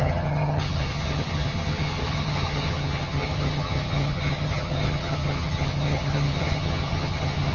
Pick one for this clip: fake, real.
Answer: fake